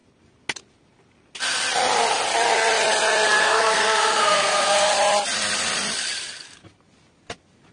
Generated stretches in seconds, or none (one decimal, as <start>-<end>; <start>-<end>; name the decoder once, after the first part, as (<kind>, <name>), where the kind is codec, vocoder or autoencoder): 3.4-4.9 (codec, SNAC)